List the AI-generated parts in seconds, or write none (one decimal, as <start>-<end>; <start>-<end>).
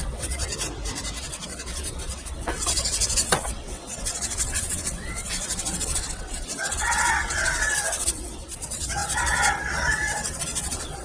0.0-0.5; 1.2-11.0